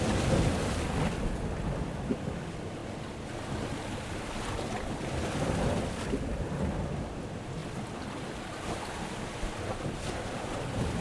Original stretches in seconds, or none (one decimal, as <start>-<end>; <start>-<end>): 0.0-11.0